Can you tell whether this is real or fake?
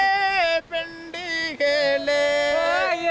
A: real